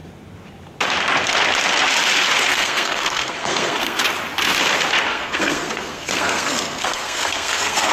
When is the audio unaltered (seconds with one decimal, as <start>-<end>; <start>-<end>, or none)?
0.0-2.5; 4.0-5.1